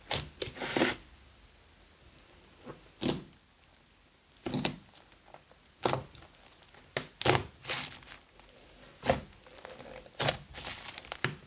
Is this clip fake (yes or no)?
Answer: no